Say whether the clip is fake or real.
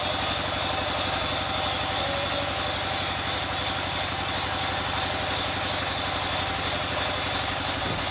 real